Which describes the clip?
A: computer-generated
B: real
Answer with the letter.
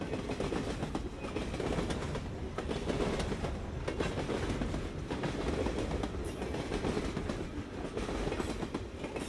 B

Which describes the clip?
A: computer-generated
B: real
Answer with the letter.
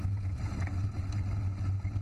B